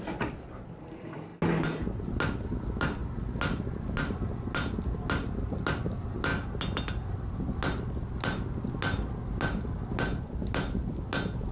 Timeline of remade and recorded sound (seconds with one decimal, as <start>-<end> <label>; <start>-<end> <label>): 0.0-11.5 recorded